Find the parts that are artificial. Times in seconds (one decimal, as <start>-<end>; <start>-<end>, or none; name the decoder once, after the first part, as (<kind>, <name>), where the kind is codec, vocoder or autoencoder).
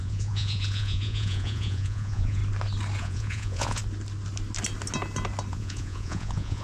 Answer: 0.0-2.4 (vocoder, Vocos); 3.0-3.8; 5.5-6.6